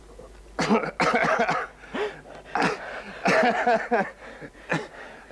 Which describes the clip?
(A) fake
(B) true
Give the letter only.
B